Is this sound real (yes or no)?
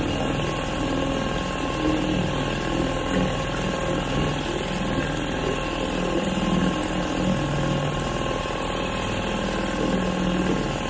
yes